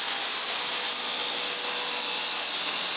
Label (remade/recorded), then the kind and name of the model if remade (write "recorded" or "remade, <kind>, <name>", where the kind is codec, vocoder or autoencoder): recorded